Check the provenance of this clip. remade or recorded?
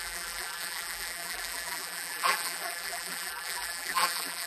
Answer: remade